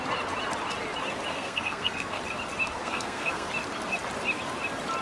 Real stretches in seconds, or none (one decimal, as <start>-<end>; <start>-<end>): 0.0-1.3; 2.2-2.8; 3.5-5.0